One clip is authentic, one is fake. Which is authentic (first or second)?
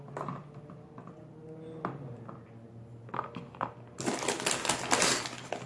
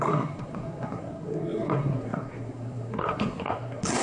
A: first